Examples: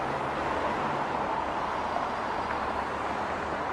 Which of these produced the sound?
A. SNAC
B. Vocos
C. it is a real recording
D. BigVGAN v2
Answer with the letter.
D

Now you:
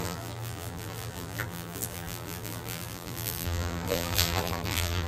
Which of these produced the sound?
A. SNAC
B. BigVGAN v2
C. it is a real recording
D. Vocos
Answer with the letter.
B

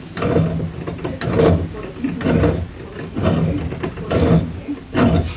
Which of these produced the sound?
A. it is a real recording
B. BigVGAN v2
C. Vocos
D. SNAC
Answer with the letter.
A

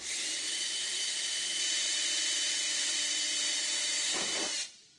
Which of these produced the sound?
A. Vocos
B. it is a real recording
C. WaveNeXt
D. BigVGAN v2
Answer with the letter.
D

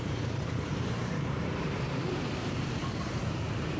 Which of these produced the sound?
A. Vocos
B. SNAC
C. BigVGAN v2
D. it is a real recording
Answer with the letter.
C